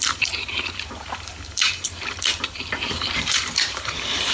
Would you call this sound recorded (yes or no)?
no